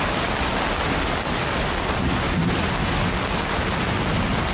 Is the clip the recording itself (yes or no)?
yes